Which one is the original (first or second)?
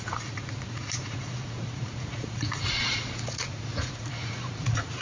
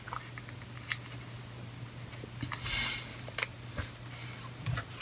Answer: second